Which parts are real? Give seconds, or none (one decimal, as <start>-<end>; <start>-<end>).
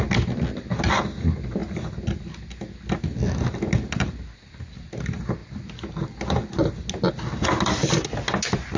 0.0-8.8